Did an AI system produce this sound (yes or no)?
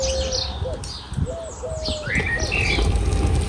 no